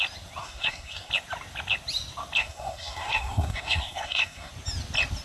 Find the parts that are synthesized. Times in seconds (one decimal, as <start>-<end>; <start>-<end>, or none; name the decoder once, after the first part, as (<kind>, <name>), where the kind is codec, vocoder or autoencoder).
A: 0.4-1.1 (codec, SNAC); 2.4-4.5